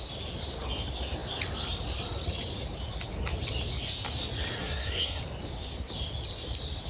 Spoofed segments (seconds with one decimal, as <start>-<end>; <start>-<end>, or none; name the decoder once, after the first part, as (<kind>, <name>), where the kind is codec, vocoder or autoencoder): 4.6-5.2 (codec, SNAC)